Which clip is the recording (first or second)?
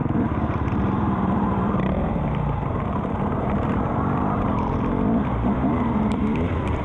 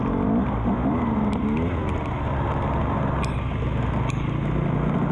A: second